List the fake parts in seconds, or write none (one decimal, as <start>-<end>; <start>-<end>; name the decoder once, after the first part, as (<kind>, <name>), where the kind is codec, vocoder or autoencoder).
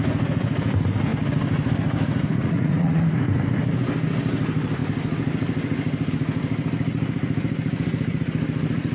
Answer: 2.4-3.1 (vocoder, Vocos)